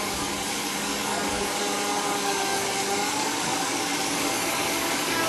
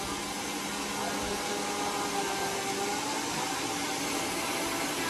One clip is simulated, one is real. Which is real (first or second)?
second